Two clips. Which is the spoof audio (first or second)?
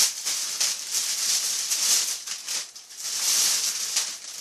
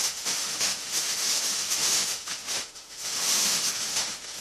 second